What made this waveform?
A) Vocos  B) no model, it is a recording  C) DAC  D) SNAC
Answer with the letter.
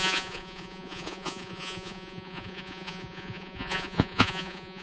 A